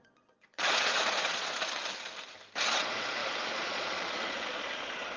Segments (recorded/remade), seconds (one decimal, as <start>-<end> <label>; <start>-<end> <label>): 0.0-1.8 remade; 1.8-2.6 recorded; 2.6-5.2 remade